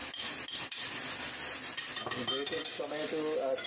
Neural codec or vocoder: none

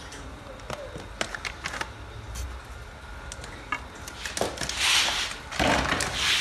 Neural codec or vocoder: none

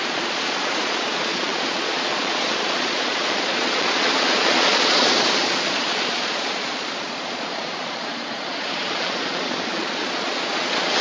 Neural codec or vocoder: vocoder, Vocos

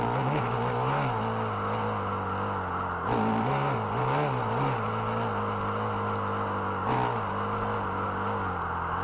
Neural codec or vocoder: none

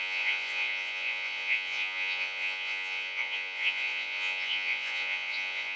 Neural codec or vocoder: vocoder, Vocos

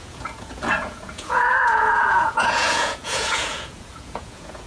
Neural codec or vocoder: vocoder, Vocos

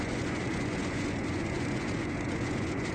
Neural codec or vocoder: vocoder, Vocos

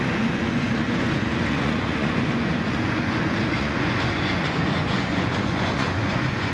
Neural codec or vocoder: vocoder, Vocos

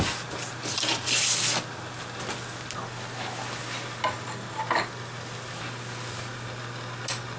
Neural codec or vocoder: none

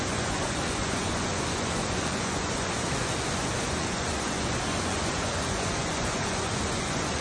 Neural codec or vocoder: vocoder, Vocos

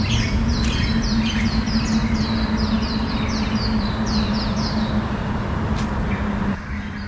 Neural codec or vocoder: none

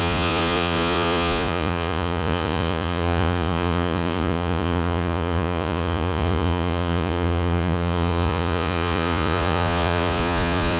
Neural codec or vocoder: vocoder, Vocos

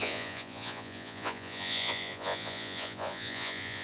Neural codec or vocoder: vocoder, Vocos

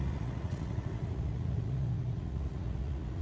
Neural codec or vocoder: vocoder, Vocos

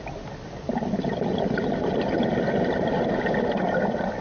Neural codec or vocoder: none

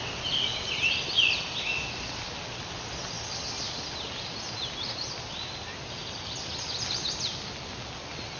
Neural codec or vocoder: none